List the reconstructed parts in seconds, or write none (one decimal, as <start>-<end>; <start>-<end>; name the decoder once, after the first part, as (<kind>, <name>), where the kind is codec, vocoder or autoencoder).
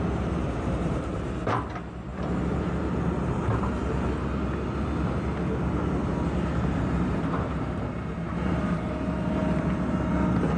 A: 0.0-2.1 (vocoder, BigVGAN v2); 6.6-9.4